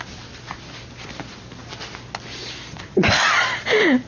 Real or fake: real